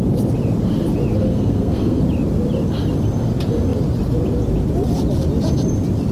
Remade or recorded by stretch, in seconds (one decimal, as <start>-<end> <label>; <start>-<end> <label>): 0.0-1.2 recorded; 1.2-2.0 remade; 2.0-6.1 recorded